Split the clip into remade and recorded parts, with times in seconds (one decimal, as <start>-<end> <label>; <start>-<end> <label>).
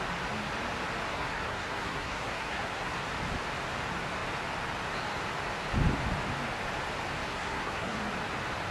0.0-1.1 recorded; 1.1-3.0 remade; 3.0-7.3 recorded; 7.3-8.1 remade; 8.1-8.7 recorded